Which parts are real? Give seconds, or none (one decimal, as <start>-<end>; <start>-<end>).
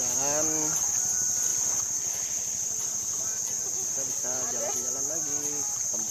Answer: 0.0-6.1